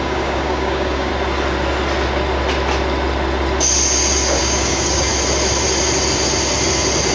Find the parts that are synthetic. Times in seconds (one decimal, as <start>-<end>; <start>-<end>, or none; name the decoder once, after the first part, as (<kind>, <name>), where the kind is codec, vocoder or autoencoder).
0.0-1.1 (codec, DAC); 4.4-5.1